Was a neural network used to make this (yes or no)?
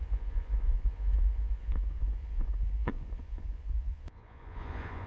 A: yes